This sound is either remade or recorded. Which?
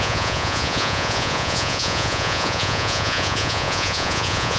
remade